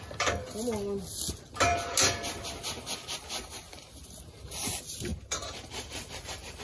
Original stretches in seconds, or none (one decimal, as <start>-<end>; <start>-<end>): 0.0-5.1